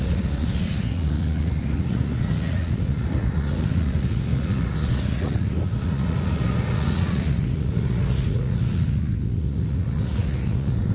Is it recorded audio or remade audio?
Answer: remade